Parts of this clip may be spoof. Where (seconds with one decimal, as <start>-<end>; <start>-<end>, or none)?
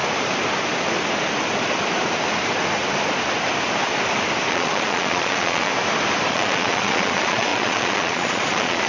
4.5-5.7; 6.3-8.9